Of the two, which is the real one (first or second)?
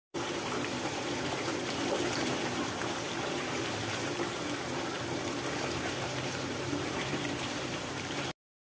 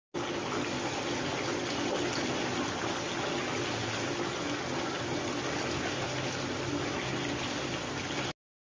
second